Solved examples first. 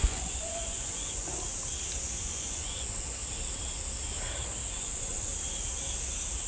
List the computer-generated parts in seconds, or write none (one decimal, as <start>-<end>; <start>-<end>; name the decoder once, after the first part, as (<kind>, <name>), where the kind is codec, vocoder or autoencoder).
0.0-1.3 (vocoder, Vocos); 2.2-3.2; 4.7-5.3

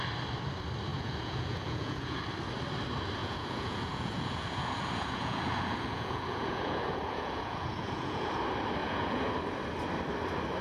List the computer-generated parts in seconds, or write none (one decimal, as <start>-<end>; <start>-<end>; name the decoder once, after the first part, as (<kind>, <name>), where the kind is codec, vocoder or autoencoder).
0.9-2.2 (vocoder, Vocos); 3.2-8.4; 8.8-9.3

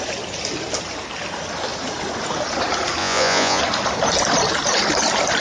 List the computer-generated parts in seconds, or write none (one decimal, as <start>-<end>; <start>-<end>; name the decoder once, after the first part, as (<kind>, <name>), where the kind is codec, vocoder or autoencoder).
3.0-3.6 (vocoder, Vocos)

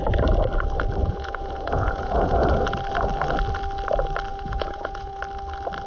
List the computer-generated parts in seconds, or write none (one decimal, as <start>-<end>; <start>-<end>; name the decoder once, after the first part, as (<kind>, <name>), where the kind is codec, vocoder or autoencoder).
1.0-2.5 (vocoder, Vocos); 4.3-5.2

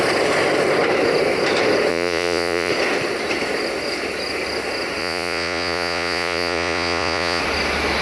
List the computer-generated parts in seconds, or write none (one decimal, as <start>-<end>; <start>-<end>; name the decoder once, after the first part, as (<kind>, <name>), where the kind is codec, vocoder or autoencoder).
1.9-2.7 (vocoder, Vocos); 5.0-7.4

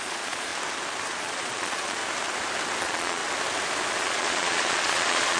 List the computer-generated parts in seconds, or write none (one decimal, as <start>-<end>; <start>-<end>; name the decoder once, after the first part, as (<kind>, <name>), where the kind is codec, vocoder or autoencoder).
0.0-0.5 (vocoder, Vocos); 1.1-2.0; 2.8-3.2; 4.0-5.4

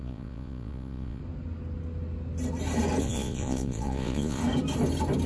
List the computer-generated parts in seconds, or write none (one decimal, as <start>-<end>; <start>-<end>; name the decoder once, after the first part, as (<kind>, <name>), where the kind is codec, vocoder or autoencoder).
0.0-1.2 (vocoder, Vocos); 3.0-4.4

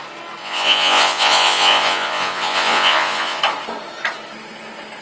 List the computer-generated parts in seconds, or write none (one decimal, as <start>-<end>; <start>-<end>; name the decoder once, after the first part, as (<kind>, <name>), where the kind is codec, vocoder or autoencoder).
0.4-3.4 (vocoder, Vocos)